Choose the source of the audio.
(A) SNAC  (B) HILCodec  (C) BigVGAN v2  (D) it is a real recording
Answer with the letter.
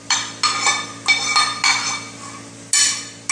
D